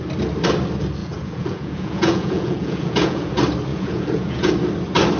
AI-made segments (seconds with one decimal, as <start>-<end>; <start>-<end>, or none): 1.0-3.3; 3.7-4.5